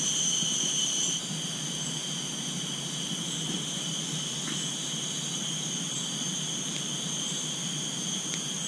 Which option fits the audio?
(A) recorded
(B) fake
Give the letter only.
A